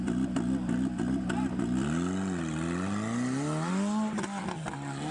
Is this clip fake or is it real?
real